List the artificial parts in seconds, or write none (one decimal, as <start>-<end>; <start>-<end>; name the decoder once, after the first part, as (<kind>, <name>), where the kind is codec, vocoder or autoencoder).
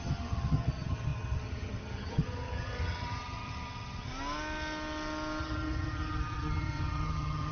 0.0-4.1 (vocoder, HiFi-GAN); 5.4-7.5